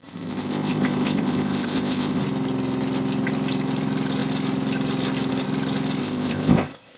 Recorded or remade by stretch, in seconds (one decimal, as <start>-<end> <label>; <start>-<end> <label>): 0.0-2.2 remade; 2.2-6.0 recorded; 6.0-7.0 remade